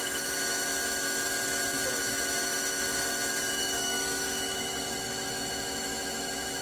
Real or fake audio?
fake